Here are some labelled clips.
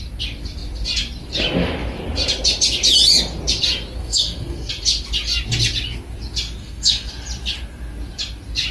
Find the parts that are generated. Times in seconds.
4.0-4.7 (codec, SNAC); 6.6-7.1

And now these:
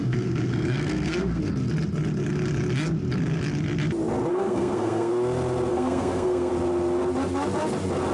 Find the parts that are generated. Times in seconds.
0.0-1.4 (codec, SNAC); 4.3-5.1; 5.7-6.5

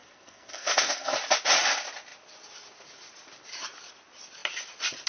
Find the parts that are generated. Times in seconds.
0.0-1.1 (codec, SNAC)

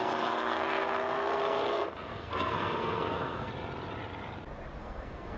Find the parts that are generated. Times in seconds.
0.0-3.5 (codec, SNAC); 4.8-5.4